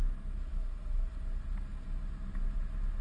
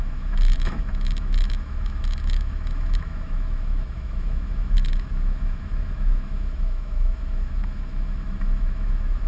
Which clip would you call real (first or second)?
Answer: first